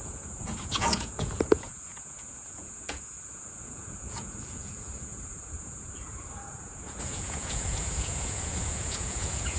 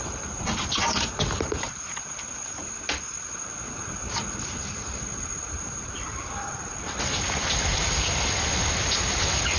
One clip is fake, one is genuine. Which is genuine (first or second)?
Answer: second